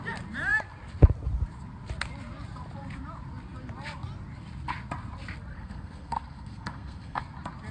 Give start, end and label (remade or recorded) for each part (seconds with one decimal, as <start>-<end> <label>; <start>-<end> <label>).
0.0-5.5 recorded; 5.5-7.2 remade; 7.2-7.7 recorded